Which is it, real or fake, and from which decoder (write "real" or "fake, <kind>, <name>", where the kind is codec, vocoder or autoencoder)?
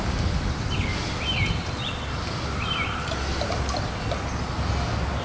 real